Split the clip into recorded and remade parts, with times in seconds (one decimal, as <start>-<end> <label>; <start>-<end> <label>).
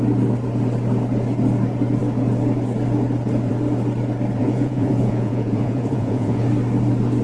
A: 0.0-4.4 recorded; 4.4-6.5 remade; 6.5-7.2 recorded